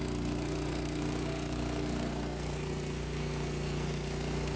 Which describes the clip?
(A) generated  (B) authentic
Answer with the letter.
A